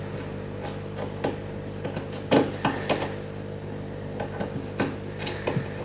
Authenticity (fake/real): real